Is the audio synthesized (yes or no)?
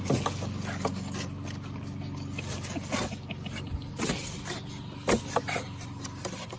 no